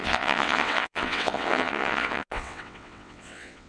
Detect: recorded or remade remade